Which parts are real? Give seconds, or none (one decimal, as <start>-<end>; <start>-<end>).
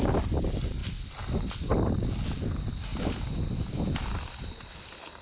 0.0-5.2